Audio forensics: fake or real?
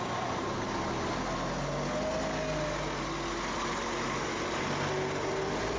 real